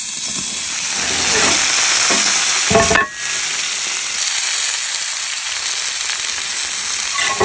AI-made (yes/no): no